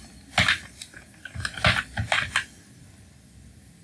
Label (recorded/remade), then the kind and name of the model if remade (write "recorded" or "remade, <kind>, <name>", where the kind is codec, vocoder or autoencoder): recorded